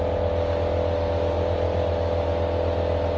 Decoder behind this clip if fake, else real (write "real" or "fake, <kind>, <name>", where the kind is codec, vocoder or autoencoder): real